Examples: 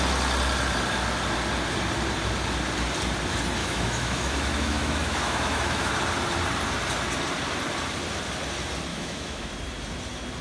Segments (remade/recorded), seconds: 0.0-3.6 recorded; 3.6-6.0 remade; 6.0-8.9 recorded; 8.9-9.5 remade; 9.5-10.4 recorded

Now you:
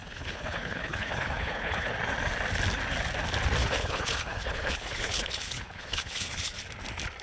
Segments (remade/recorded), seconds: 0.0-1.9 remade; 1.9-3.6 recorded; 3.6-6.6 remade; 6.6-7.2 recorded

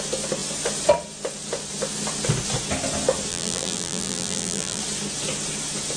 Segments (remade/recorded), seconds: 0.0-3.3 recorded; 3.3-4.8 remade; 4.8-6.0 recorded

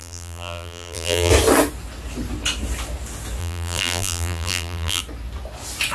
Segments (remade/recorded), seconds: 0.0-1.3 remade; 1.3-3.4 recorded; 3.4-5.0 remade; 5.0-5.9 recorded